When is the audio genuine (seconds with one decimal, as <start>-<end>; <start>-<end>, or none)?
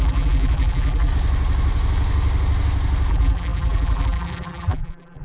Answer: 1.1-3.1